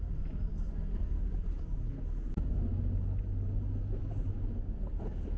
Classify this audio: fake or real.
real